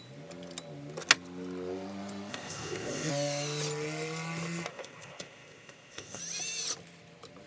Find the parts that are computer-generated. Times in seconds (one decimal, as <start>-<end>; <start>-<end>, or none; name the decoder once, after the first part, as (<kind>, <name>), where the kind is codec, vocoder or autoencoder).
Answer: 2.3-3.1 (codec, ZipCodec); 4.7-6.2